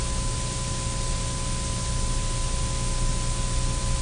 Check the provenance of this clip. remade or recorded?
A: recorded